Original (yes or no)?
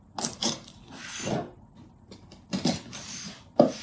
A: yes